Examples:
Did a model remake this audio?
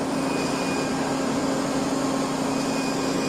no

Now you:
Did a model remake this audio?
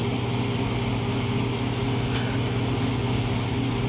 no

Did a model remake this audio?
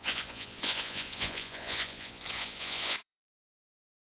yes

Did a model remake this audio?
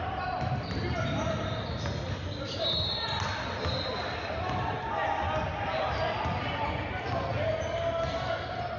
no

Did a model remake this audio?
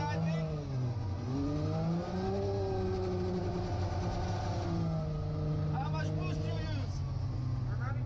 no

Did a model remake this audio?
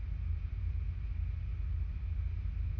no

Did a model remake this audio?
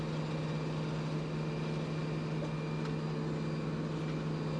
no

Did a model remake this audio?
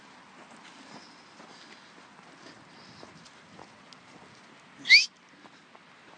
no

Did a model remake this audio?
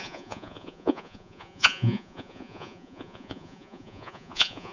yes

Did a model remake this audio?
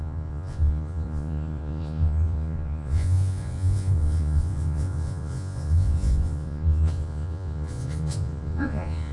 yes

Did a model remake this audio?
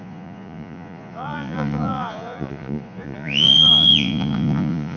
yes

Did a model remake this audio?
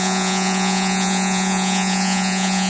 yes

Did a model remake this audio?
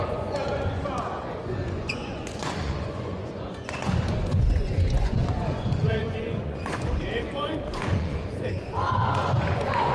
yes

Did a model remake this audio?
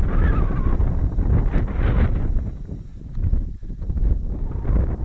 no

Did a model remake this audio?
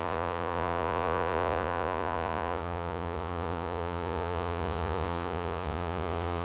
yes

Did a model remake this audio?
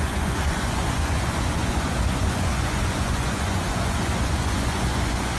yes